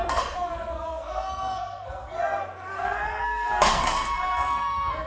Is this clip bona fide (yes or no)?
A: no